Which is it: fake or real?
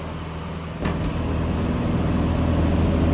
real